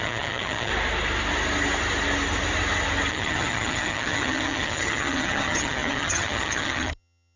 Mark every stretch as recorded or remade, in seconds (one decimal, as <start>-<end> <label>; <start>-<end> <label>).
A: 0.0-0.7 remade; 0.7-3.1 recorded; 3.1-7.4 remade